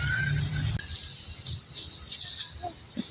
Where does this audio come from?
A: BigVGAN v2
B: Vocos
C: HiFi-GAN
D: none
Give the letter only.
D